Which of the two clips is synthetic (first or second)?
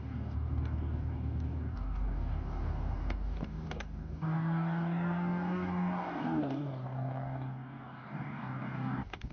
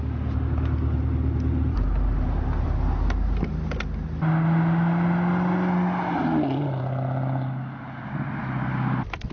first